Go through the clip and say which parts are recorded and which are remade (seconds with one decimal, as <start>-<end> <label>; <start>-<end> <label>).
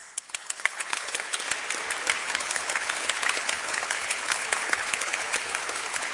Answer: 0.0-1.4 remade; 1.4-2.2 recorded; 2.2-6.1 remade